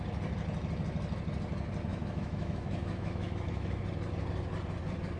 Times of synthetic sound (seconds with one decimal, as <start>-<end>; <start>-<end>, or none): 1.9-3.8